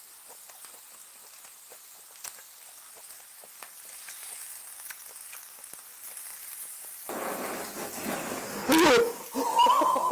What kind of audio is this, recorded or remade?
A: recorded